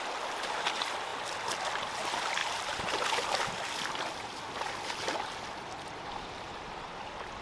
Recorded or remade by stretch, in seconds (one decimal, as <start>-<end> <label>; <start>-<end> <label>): 0.0-7.4 recorded